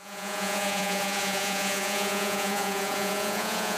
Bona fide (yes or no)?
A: no